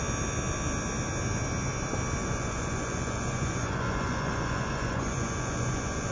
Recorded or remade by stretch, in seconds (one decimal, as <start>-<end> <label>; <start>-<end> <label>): 0.0-2.2 recorded; 2.2-6.1 remade

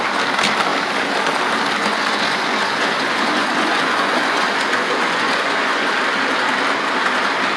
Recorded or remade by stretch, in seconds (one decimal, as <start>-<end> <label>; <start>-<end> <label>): 0.0-1.8 recorded; 1.8-5.9 remade; 5.9-7.6 recorded

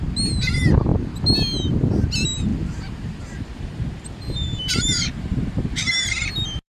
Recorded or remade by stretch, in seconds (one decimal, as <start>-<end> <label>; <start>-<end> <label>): 0.0-2.5 recorded; 2.5-6.8 remade

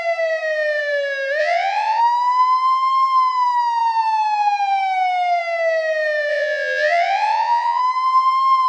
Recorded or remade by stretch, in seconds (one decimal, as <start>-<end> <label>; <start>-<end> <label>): 0.0-1.4 recorded; 1.4-2.0 remade; 2.0-6.3 recorded; 6.3-7.8 remade; 7.8-8.7 recorded

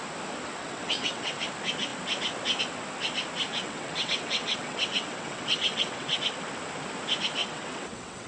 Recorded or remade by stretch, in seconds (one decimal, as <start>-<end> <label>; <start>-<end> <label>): 0.0-0.6 recorded; 0.6-1.4 remade; 1.4-3.5 recorded; 3.5-6.2 remade; 6.2-7.4 recorded; 7.4-8.3 remade

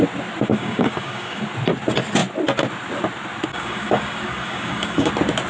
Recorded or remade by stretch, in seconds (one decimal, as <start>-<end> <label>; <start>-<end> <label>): 0.0-0.5 recorded; 0.5-1.4 remade; 1.4-3.5 recorded; 3.5-5.1 remade; 5.1-5.5 recorded

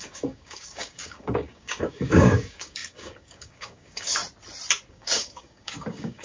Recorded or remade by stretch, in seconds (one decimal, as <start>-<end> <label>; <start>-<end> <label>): 0.0-4.2 remade; 4.2-4.9 recorded; 4.9-6.2 remade

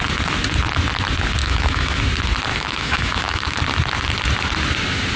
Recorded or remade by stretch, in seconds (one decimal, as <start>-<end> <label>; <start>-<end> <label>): 0.0-1.4 recorded; 1.4-2.0 remade; 2.0-2.5 recorded; 2.5-3.6 remade; 3.6-5.2 recorded